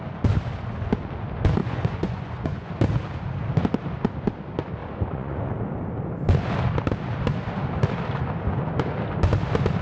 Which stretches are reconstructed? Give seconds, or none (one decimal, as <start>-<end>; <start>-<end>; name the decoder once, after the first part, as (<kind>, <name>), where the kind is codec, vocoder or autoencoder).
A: 1.6-2.7 (vocoder, Vocos); 4.8-5.5